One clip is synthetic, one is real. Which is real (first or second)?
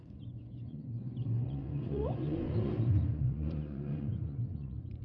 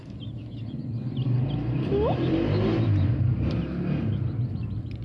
second